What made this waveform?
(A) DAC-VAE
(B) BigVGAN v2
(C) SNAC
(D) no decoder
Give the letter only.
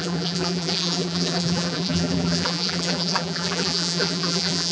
B